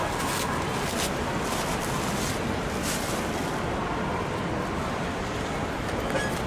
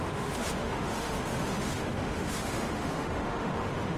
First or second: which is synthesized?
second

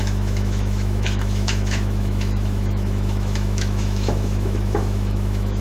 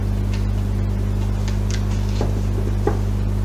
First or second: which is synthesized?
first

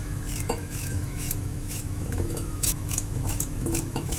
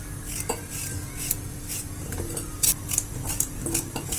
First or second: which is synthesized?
first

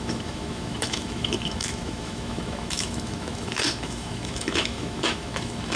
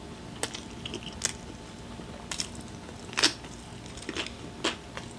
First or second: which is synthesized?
first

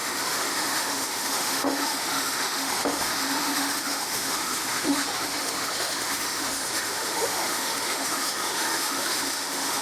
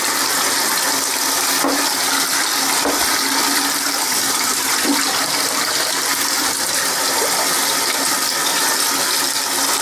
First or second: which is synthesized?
first